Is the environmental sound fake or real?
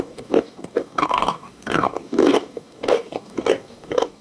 fake